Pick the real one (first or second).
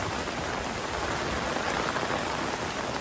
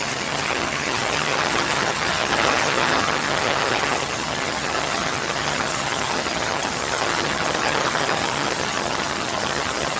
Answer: first